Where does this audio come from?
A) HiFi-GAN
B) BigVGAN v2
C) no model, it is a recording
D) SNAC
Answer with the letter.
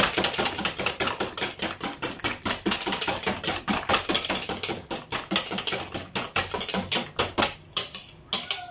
C